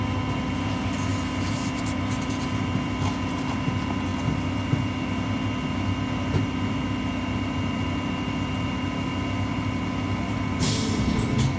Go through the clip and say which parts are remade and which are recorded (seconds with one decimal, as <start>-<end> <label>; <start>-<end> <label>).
0.0-11.6 recorded